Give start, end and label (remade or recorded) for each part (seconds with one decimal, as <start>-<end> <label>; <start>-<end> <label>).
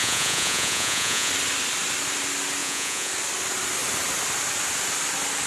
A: 0.0-1.3 remade; 1.3-2.6 recorded; 2.6-3.1 remade; 3.1-5.5 recorded